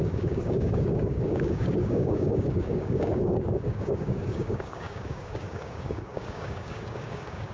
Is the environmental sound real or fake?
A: fake